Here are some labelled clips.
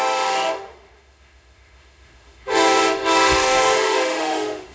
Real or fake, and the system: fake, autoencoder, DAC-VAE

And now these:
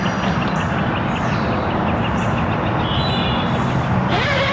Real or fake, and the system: real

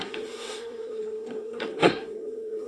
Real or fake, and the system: fake, codec, SNAC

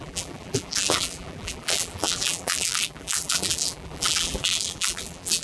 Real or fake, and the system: fake, vocoder, BigVGAN v2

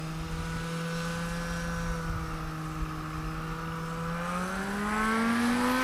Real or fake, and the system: real